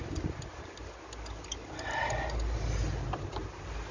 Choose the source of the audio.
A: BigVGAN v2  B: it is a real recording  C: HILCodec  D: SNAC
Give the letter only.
B